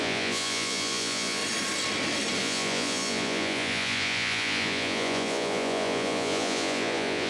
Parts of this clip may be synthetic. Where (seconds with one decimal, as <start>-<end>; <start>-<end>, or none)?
0.0-1.4; 2.4-7.3